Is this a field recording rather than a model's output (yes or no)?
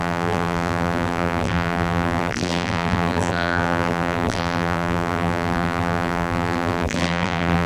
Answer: no